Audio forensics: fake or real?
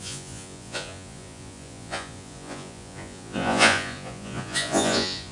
fake